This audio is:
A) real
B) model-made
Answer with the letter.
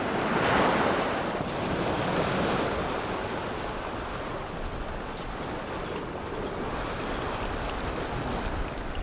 A